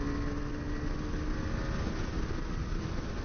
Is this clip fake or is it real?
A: real